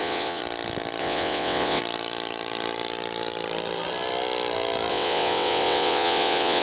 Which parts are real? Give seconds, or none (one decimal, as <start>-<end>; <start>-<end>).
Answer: 0.4-1.0; 1.8-4.9